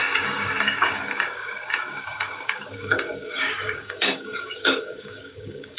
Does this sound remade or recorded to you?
remade